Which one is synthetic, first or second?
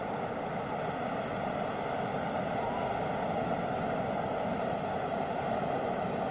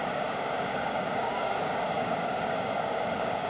second